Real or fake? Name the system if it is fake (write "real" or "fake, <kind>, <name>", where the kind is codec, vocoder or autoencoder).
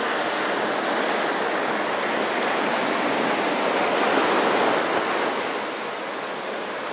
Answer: real